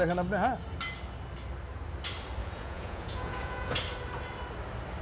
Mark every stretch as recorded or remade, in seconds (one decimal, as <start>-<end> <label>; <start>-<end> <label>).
0.0-2.4 recorded; 2.4-3.8 remade; 3.8-5.0 recorded